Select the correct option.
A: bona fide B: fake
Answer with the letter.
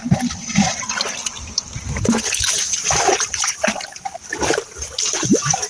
B